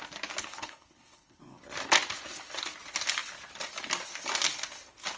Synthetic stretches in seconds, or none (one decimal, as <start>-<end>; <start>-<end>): 0.4-1.4